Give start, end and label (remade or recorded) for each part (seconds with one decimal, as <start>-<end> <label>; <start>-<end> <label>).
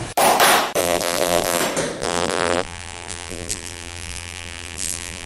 0.0-0.8 recorded; 0.8-1.6 remade; 1.6-2.0 recorded; 2.0-5.3 remade